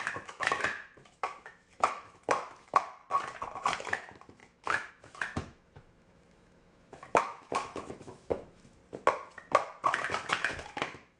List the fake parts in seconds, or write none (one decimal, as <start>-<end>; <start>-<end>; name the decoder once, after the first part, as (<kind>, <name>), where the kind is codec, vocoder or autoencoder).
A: 0.0-3.0 (autoencoder, DAC-VAE); 3.8-8.8; 10.3-11.2